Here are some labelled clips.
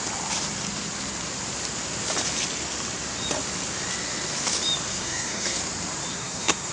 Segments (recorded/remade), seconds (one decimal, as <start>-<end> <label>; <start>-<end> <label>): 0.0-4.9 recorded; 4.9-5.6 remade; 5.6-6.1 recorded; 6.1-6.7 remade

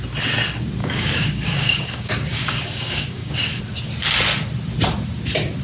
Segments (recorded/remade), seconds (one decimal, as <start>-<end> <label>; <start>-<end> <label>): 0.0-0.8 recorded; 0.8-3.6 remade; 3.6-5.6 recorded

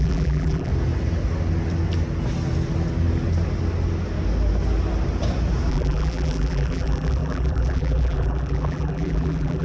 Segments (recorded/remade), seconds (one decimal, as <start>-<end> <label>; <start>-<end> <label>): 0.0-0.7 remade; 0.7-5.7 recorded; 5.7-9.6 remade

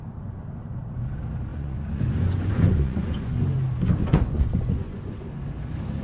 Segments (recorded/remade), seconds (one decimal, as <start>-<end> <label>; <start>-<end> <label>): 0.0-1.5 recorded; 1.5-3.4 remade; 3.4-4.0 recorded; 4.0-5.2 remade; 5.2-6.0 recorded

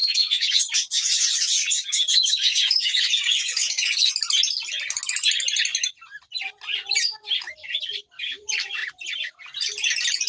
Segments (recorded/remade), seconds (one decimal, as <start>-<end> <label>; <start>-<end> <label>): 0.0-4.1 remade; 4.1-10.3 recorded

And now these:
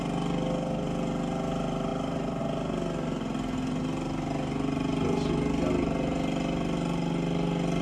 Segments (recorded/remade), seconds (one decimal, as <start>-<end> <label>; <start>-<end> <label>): 0.0-7.8 recorded

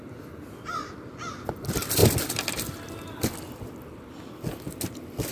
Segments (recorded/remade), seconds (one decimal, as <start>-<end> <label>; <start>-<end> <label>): 0.0-0.7 remade; 0.7-1.3 recorded; 1.3-2.0 remade; 2.0-5.3 recorded

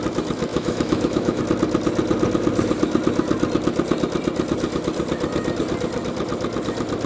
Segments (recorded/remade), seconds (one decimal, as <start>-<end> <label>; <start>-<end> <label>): 0.0-0.5 recorded; 0.5-1.4 remade; 1.4-7.1 recorded